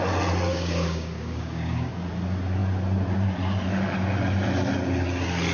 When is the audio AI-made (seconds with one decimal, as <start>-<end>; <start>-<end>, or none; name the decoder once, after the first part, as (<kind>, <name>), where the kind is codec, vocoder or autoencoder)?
0.5-1.9 (codec, DAC)